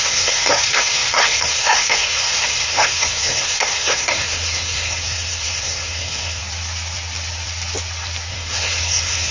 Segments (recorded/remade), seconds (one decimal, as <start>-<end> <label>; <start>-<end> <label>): 0.0-6.4 remade; 6.4-8.3 recorded; 8.3-9.3 remade

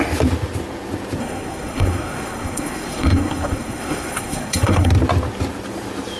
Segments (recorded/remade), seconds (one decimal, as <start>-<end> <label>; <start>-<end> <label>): 0.0-1.2 recorded; 1.2-4.9 remade; 4.9-6.2 recorded

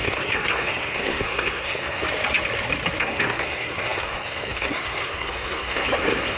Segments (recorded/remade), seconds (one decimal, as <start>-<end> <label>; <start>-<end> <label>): 0.0-2.0 remade; 2.0-3.0 recorded; 3.0-6.4 remade

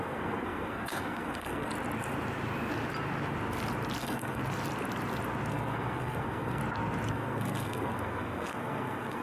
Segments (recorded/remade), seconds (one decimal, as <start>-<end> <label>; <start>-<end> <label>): 0.0-1.7 remade; 1.7-4.0 recorded; 4.0-4.4 remade; 4.4-5.5 recorded; 5.5-6.6 remade; 6.6-7.1 recorded; 7.1-9.2 remade

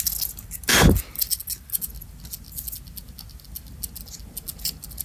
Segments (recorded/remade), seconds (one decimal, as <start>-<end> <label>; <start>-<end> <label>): 0.0-5.0 recorded

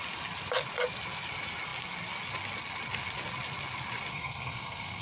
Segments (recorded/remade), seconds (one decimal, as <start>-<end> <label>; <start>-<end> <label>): 0.0-4.1 recorded; 4.1-5.0 remade

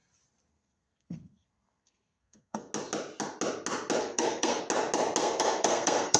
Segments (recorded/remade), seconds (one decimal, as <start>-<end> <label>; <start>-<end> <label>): 0.0-0.5 recorded; 0.5-2.7 remade; 2.7-4.0 recorded; 4.0-4.6 remade; 4.6-5.2 recorded; 5.2-6.2 remade

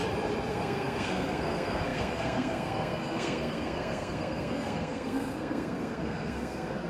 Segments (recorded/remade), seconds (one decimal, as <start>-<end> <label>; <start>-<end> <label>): 0.0-0.5 recorded; 0.5-6.9 remade